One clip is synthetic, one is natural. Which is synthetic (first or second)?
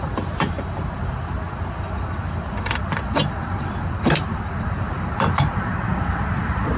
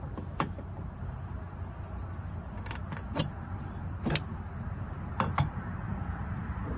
first